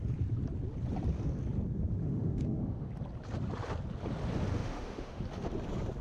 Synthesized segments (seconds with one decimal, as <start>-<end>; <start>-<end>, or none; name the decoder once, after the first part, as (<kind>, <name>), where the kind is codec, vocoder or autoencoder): 2.0-2.9 (autoencoder, DAC-VAE); 4.6-5.2